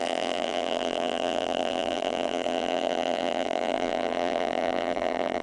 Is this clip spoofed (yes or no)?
yes